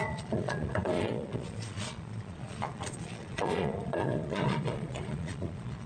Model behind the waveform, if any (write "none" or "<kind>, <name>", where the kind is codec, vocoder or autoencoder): vocoder, Vocos